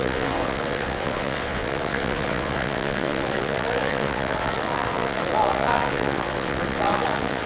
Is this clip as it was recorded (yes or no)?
no